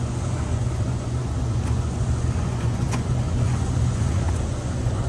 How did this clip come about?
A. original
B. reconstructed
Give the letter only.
B